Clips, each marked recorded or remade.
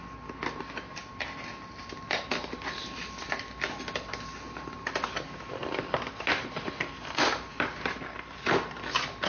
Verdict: recorded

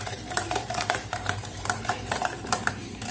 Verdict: remade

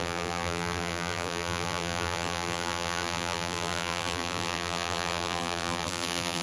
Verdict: remade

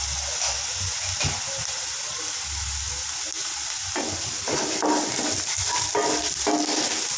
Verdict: recorded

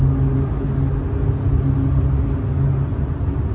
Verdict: recorded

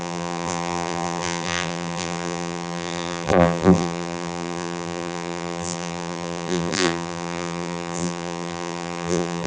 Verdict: remade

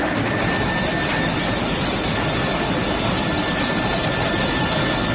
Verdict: recorded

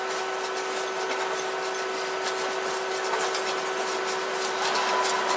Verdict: recorded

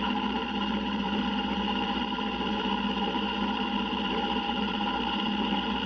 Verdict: remade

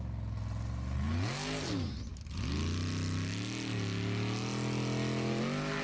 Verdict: recorded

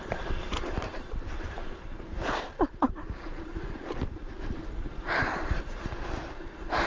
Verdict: remade